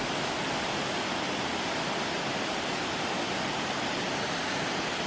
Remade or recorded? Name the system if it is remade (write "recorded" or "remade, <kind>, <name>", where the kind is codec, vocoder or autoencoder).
recorded